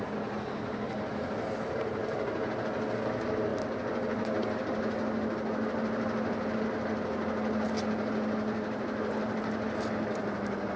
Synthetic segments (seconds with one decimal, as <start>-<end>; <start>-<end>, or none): none